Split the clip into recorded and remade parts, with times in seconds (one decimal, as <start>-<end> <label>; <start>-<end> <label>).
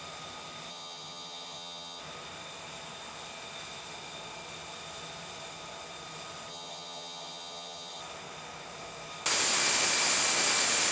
0.0-0.7 recorded; 0.7-2.0 remade; 2.0-6.5 recorded; 6.5-8.0 remade; 8.0-10.9 recorded